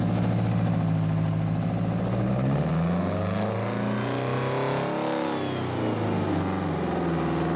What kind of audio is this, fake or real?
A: real